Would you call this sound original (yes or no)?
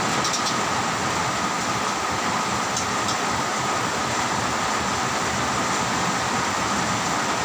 yes